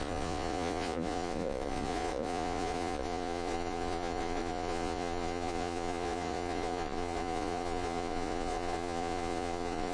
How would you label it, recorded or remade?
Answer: remade